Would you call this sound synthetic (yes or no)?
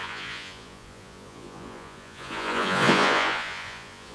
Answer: yes